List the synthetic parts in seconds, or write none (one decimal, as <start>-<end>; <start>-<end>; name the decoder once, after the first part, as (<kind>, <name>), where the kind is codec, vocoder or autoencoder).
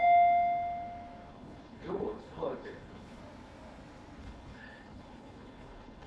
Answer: 1.3-3.2 (codec, HILCodec); 4.2-6.1